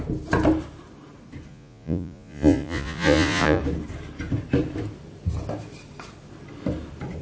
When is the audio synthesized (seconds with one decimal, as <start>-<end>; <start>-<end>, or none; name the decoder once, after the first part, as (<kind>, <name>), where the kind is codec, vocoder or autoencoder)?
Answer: 1.5-3.6 (vocoder, Vocos)